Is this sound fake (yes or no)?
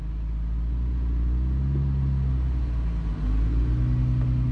no